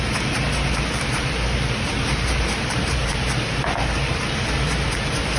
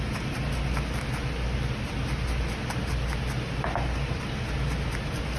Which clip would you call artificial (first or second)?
first